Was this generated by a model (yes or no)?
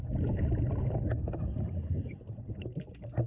no